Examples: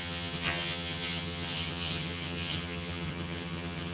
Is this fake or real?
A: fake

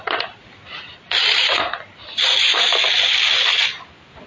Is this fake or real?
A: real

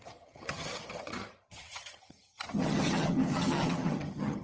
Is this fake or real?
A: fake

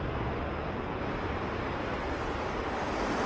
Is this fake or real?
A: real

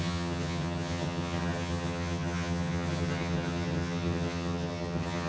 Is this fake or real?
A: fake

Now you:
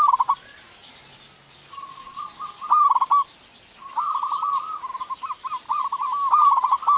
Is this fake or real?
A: real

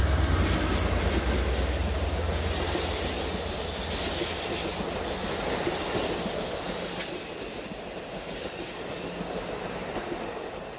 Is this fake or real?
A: real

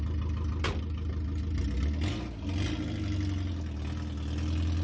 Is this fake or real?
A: real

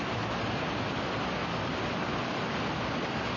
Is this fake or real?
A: real